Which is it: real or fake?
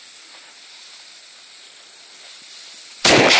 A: real